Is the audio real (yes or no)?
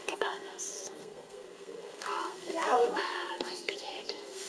no